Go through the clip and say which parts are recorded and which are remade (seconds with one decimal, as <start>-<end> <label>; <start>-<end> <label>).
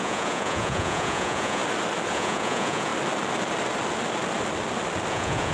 0.0-1.6 remade; 1.6-2.1 recorded; 2.1-2.9 remade; 2.9-5.1 recorded; 5.1-5.5 remade